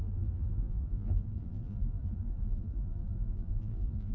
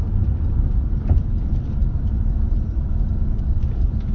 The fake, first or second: first